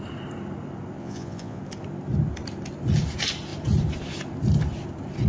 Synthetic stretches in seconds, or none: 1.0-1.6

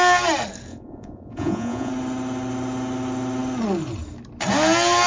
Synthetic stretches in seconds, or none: 0.7-1.9

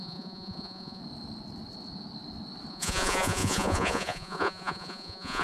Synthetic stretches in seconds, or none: 0.0-1.0; 2.7-5.4

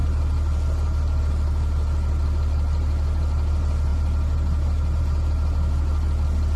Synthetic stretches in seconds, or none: none